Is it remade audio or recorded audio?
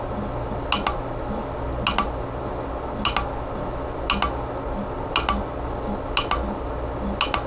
recorded